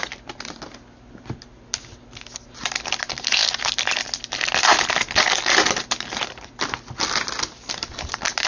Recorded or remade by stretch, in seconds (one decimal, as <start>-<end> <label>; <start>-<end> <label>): 0.0-8.5 recorded

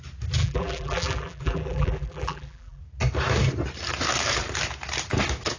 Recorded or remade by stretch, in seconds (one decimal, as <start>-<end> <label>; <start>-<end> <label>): 0.0-0.4 recorded; 0.4-2.8 remade; 2.8-5.6 recorded

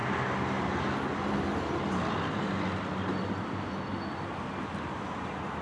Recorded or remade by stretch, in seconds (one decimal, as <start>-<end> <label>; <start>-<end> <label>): 0.0-5.6 recorded